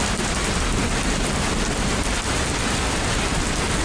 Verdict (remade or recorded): recorded